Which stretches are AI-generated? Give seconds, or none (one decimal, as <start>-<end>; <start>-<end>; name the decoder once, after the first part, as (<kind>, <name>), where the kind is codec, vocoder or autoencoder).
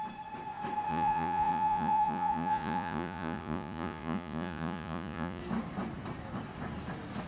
0.9-5.4 (vocoder, Vocos)